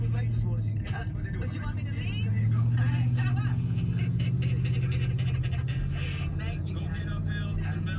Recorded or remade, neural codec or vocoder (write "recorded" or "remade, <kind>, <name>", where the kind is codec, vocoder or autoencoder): recorded